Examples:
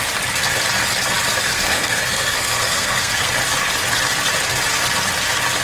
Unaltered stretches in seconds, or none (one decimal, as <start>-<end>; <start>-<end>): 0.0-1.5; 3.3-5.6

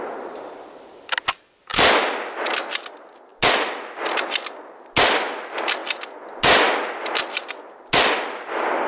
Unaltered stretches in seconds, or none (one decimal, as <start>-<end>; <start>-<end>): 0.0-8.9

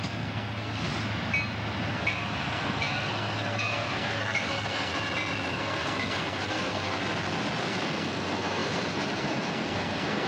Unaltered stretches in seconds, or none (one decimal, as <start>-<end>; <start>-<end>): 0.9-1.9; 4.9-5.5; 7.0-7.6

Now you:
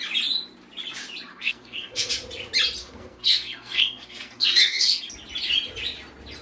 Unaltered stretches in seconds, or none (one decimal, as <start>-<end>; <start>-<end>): 0.0-1.3; 2.1-2.8; 5.0-6.4